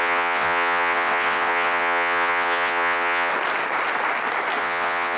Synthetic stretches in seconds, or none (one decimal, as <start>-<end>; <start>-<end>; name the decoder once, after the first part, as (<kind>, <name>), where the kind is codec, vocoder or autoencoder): 0.0-3.3 (vocoder, WaveNeXt); 4.6-5.2